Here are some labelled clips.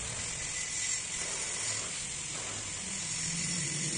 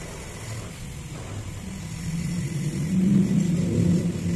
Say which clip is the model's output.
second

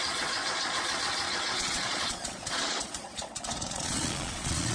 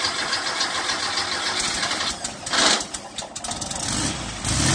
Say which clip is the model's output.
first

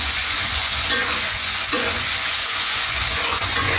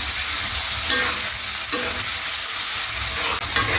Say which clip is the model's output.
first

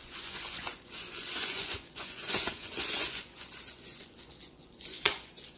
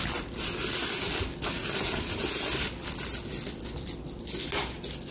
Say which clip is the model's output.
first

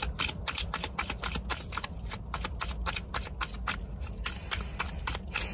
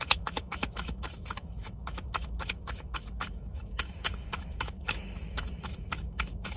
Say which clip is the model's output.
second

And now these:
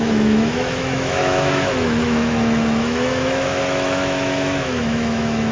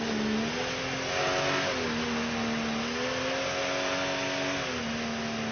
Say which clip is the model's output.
first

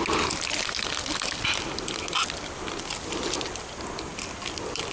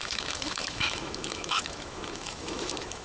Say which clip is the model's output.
second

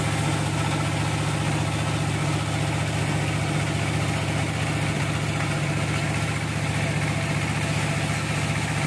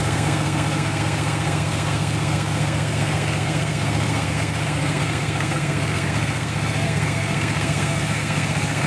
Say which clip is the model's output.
second